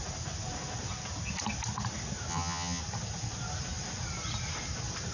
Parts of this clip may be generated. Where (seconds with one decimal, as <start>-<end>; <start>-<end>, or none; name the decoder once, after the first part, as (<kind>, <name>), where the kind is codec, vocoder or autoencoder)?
2.3-2.8 (vocoder, HiFi-GAN)